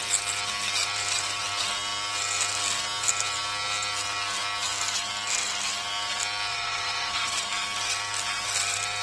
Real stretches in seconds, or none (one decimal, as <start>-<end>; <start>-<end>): 0.0-6.5; 7.5-9.0